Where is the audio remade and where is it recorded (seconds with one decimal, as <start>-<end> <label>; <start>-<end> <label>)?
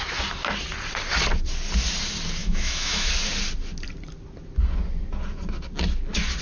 0.0-2.4 recorded; 2.4-3.1 remade; 3.1-6.4 recorded